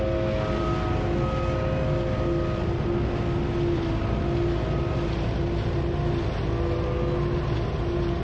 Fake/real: real